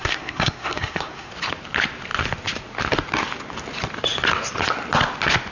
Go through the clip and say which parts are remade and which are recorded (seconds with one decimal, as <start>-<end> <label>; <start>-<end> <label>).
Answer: 0.0-1.3 remade; 1.3-5.5 recorded